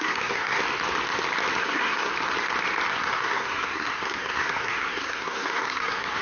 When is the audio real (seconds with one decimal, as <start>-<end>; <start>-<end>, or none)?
0.6-1.6; 2.1-2.9